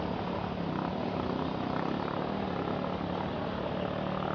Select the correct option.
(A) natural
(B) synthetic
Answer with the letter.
A